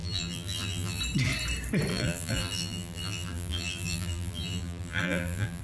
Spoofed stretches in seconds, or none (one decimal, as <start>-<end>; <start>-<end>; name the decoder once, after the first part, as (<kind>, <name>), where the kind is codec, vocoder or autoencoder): 0.0-1.0 (vocoder, BigVGAN v2); 1.9-5.6